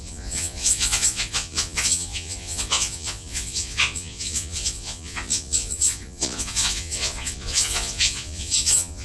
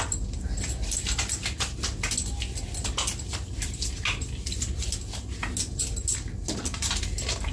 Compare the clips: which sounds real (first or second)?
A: second